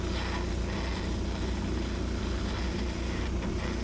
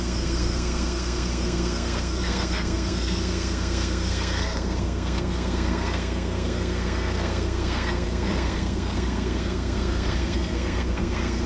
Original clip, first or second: first